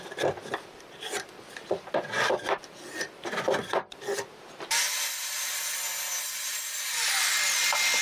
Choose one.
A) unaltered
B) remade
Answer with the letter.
A